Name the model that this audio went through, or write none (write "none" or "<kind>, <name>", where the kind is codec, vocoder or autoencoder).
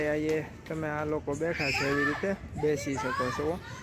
none